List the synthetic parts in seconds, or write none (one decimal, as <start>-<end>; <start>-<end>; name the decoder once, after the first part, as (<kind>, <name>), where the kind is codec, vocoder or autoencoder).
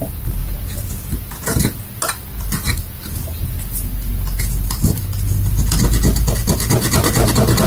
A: 0.4-1.8 (vocoder, Vocos)